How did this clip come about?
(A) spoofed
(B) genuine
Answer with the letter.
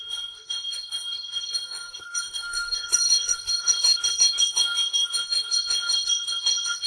A